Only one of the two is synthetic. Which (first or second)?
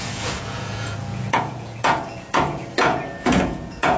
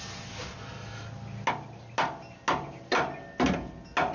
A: first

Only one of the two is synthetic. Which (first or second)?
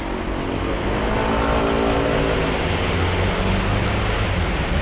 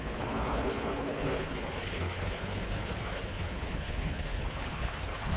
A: second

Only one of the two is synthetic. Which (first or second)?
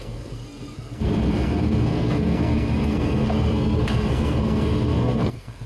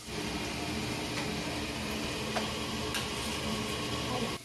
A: first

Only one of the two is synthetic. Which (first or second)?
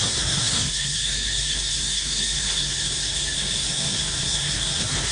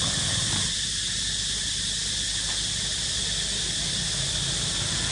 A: first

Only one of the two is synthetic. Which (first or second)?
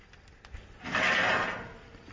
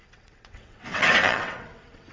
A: second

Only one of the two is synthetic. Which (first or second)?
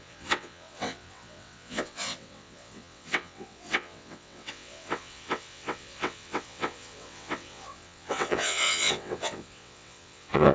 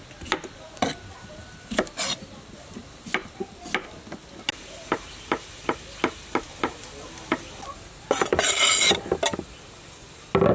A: first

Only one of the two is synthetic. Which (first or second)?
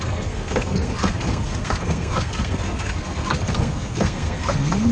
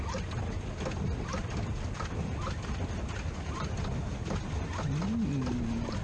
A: first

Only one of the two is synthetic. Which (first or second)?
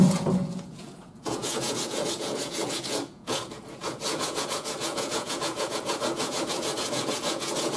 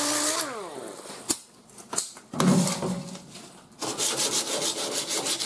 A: first